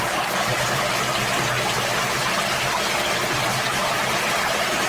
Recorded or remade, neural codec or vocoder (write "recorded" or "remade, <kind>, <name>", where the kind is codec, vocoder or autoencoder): recorded